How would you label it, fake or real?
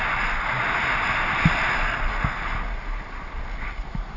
real